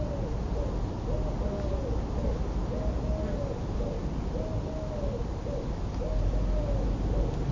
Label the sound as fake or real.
real